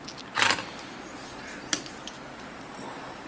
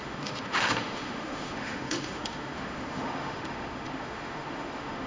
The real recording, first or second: first